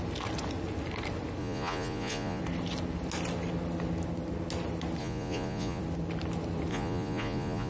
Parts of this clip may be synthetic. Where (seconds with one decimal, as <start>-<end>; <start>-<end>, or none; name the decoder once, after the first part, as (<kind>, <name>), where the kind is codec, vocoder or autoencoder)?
1.4-2.4 (vocoder, Vocos); 5.0-5.8; 6.7-7.7